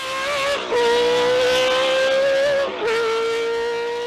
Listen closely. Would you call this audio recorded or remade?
recorded